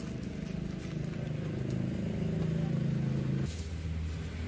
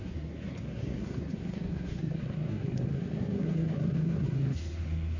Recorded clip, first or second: first